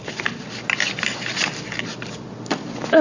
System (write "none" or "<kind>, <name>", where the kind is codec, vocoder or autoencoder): none